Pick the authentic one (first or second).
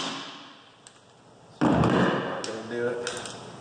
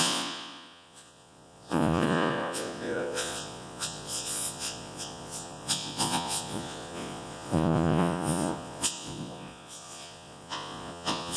first